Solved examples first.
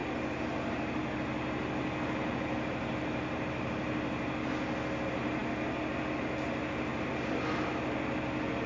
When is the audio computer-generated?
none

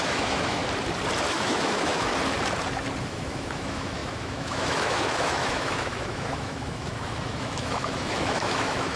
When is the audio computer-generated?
0.0-0.6 (autoencoder, DAC-VAE); 1.3-2.1; 3.0-9.0

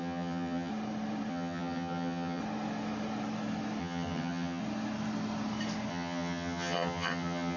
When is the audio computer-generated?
0.0-0.7 (vocoder, HiFi-GAN); 1.3-2.4; 3.8-4.6; 5.9-7.6

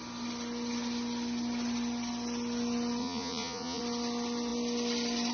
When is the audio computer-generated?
3.0-3.8 (vocoder, Vocos)

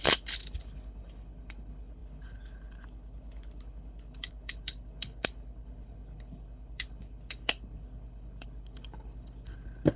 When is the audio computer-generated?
0.0-10.0 (codec, HILCodec)

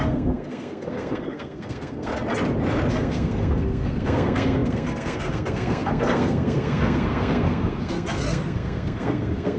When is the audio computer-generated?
0.0-2.1 (codec, SNAC); 2.9-9.6

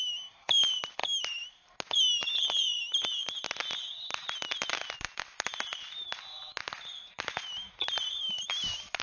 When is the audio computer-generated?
6.9-8.5 (vocoder, BigVGAN v2)

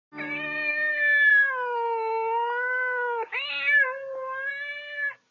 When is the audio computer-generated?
none